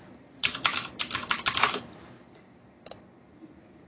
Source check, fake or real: real